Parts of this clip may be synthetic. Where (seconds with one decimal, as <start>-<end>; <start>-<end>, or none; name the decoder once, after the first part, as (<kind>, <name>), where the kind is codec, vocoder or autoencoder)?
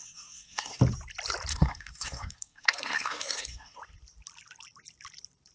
0.0-0.8 (codec, SNAC); 1.5-3.8